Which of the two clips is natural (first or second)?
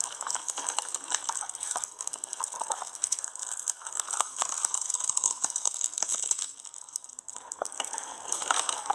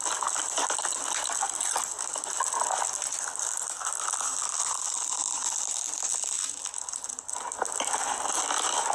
second